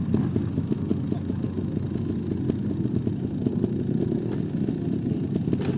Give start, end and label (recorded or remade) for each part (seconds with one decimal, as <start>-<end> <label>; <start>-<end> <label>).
0.0-5.8 recorded